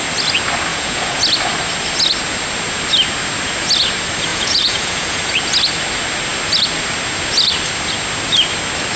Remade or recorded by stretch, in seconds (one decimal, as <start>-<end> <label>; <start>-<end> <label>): 0.0-0.7 recorded; 0.7-1.2 remade; 1.2-4.3 recorded; 4.3-5.2 remade; 5.2-9.0 recorded